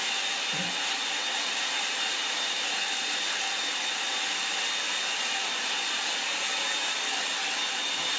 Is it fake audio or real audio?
real